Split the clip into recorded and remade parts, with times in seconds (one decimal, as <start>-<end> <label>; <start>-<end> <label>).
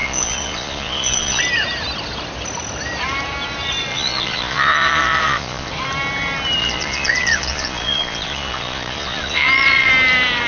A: 0.0-1.4 remade; 1.4-3.9 recorded; 3.9-5.7 remade; 5.7-6.6 recorded; 6.6-9.9 remade; 9.9-10.5 recorded